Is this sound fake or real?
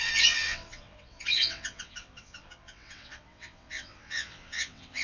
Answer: fake